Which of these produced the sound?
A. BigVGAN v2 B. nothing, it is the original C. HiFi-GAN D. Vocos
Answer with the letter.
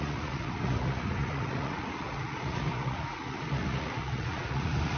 D